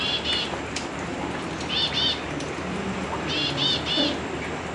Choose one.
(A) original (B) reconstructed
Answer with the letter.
A